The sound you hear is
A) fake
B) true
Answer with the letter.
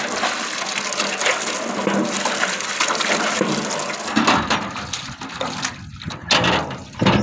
B